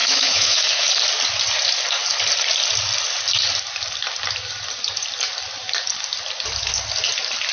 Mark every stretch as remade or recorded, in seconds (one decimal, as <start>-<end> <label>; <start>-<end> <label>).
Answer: 0.0-0.9 remade; 0.9-7.5 recorded